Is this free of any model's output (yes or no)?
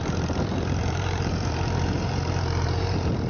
no